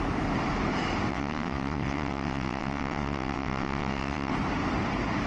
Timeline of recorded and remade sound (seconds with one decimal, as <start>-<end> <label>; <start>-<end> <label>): 0.0-1.1 recorded; 1.1-4.3 remade; 4.3-5.3 recorded

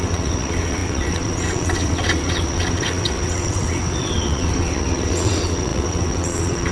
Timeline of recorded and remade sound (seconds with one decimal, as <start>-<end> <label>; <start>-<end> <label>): 0.0-6.7 remade